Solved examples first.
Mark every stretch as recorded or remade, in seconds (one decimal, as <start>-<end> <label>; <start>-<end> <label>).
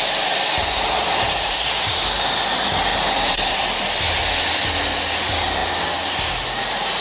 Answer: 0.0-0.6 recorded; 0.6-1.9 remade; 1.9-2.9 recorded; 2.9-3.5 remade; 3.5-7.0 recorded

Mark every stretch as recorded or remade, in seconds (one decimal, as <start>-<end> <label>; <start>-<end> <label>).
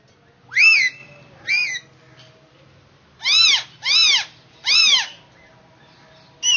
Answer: 0.0-3.8 recorded; 3.8-5.1 remade; 5.1-6.6 recorded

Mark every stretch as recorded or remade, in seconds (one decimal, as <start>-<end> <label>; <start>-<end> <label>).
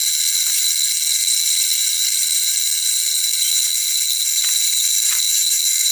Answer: 0.0-5.9 remade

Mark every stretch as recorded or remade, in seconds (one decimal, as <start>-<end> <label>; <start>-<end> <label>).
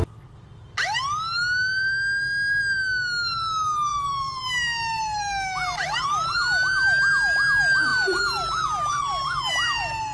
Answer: 0.0-3.9 recorded; 3.9-4.5 remade; 4.5-10.1 recorded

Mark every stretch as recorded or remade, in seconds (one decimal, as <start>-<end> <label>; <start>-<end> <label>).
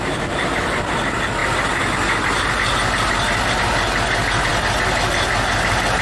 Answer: 0.0-6.0 recorded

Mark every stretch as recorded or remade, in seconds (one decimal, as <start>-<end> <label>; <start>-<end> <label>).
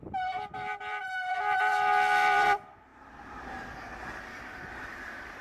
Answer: 0.0-2.9 remade; 2.9-4.2 recorded; 4.2-5.4 remade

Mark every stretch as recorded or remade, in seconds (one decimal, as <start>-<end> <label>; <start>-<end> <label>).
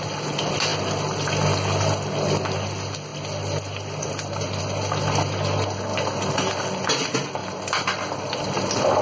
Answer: 0.0-0.7 recorded; 0.7-1.3 remade; 1.3-3.1 recorded; 3.1-4.6 remade; 4.6-7.4 recorded; 7.4-8.4 remade; 8.4-9.0 recorded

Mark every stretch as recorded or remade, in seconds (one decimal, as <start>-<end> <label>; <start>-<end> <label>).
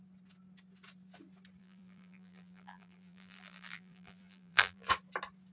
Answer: 0.0-1.6 recorded; 1.6-4.9 remade; 4.9-5.5 recorded